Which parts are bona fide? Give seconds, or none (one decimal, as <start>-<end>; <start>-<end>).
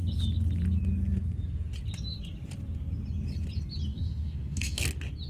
0.0-3.9; 4.8-5.3